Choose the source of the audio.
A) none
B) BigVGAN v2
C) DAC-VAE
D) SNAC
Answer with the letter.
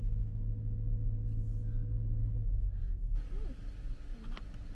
A